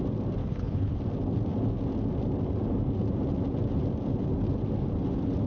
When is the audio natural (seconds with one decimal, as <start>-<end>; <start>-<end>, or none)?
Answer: 0.0-0.4; 1.0-5.5